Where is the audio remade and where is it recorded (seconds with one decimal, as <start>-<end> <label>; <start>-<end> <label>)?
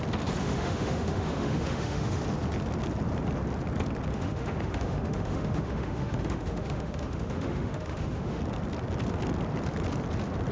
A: 0.0-0.4 recorded; 0.4-2.2 remade; 2.2-4.1 recorded; 4.1-8.4 remade; 8.4-10.5 recorded